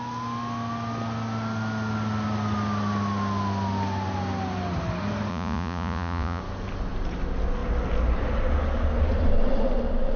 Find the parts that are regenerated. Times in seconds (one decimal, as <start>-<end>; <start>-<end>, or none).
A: 5.3-6.4